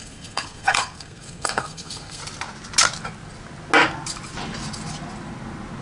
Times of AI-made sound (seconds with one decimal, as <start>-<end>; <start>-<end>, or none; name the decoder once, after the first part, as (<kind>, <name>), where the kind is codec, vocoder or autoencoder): 0.0-2.2 (codec, SNAC)

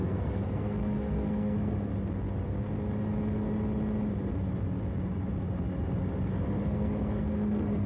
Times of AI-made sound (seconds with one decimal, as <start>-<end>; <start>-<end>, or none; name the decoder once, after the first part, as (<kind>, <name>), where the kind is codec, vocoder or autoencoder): 0.0-1.9 (codec, SNAC); 6.6-7.9

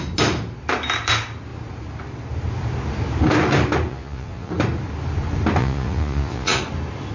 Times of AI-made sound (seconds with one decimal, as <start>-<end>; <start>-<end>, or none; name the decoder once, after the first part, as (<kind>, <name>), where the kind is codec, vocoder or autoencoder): 3.9-4.5 (vocoder, Vocos); 5.6-6.6

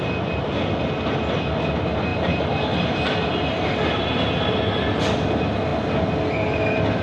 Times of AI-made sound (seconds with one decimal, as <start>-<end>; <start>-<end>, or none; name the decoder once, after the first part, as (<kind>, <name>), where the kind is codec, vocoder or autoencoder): 2.1-4.5 (vocoder, BigVGAN v2)